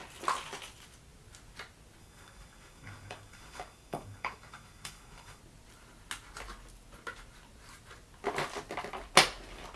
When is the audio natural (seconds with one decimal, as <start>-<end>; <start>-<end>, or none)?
0.0-2.0; 5.4-9.8